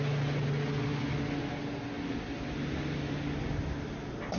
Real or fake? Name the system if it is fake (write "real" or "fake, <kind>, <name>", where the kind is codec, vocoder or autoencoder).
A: real